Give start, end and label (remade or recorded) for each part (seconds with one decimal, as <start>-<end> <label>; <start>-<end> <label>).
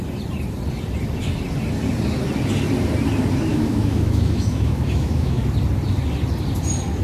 0.0-3.5 recorded; 3.5-5.4 remade; 5.4-7.0 recorded